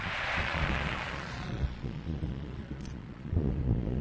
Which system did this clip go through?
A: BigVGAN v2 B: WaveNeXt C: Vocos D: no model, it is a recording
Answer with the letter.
C